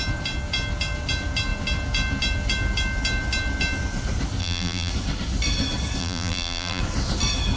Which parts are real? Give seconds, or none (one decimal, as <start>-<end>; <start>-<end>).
0.0-4.4; 4.9-6.0; 6.8-7.6